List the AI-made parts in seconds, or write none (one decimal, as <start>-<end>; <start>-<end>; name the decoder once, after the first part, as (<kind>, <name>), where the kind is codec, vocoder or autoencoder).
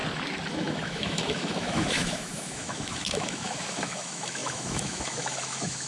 0.5-5.9 (autoencoder, DAC-VAE)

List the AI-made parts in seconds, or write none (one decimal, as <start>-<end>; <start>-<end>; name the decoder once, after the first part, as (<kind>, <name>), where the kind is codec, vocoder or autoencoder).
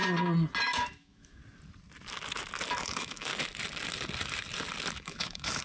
0.6-1.4 (autoencoder, DAC-VAE); 2.8-3.3; 4.9-5.6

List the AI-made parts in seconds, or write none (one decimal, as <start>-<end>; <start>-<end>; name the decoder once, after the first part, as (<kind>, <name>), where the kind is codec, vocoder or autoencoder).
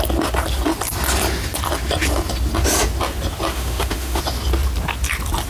3.5-4.2 (autoencoder, DAC-VAE)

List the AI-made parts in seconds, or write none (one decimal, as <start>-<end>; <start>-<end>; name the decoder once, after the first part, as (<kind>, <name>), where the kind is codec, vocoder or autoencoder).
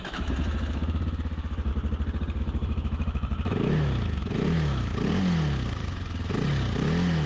0.0-1.7 (autoencoder, DAC-VAE); 2.4-4.9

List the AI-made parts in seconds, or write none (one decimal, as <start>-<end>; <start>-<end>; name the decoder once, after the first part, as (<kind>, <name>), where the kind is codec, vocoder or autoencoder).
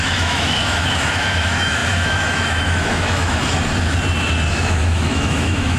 0.0-3.4 (autoencoder, DAC-VAE); 4.5-5.8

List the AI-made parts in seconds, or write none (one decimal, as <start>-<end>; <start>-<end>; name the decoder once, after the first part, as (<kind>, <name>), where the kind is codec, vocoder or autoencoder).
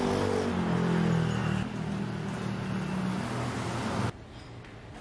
none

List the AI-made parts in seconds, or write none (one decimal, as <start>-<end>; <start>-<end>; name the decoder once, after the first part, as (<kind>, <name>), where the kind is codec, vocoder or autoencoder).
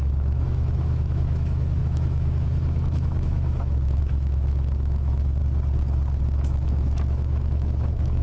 0.0-5.4 (autoencoder, DAC-VAE); 6.2-8.2